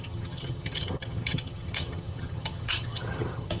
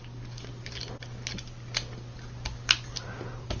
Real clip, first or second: second